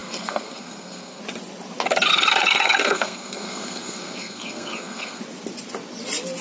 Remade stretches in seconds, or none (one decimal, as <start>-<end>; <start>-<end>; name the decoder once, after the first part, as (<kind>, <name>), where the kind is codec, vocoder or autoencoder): 0.0-1.2 (codec, SNAC); 2.1-5.2